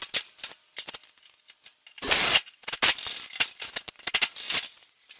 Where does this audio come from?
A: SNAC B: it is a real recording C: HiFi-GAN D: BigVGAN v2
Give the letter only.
B